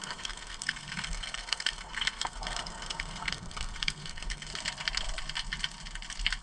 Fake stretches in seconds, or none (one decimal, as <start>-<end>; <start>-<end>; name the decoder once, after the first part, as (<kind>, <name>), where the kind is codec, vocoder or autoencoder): 0.0-4.5 (codec, SNAC)